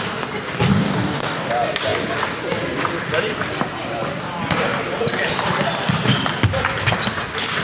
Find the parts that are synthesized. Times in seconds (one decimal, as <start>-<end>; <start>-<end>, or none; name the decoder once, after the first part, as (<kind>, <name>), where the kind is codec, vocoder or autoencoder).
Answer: 0.7-1.5 (codec, DAC)